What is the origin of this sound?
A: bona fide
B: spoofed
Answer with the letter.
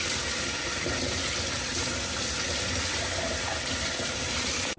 A